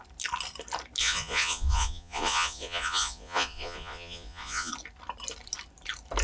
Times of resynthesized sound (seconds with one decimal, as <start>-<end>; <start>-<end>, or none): 1.0-4.7